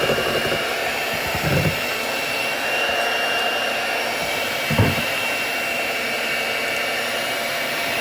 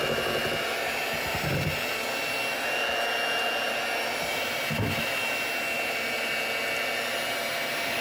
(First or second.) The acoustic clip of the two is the second